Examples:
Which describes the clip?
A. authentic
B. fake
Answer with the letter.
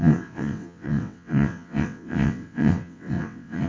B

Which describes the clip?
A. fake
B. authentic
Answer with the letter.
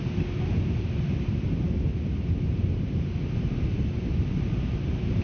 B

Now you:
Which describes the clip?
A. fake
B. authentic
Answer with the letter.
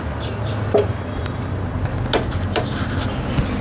B